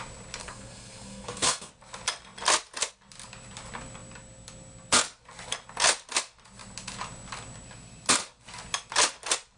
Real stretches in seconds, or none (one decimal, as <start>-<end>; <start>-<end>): 0.0-0.4; 1.7-9.6